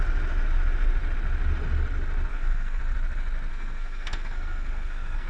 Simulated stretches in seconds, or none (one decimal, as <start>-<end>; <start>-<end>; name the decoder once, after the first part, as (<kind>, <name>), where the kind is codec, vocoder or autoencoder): 2.3-2.8 (codec, SNAC); 3.5-5.3